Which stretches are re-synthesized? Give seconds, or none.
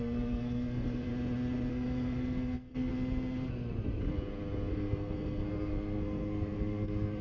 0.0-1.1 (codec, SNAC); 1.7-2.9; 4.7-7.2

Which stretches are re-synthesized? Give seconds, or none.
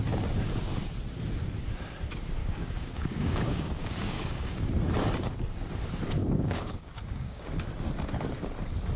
2.4-4.6 (codec, DAC); 6.2-7.5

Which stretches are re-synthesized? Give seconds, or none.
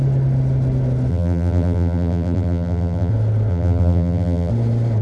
1.1-3.1 (vocoder, BigVGAN v2); 3.5-4.5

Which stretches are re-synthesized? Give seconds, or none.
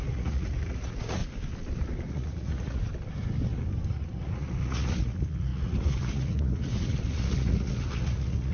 0.0-1.2 (vocoder, Vocos); 2.1-2.9; 3.9-8.5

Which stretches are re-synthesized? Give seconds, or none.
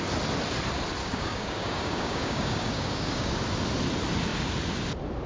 1.0-3.3 (codec, DAC)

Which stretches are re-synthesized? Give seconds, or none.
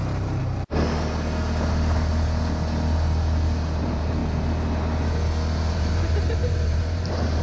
0.0-0.4 (vocoder, BigVGAN v2); 3.8-4.2; 5.7-7.4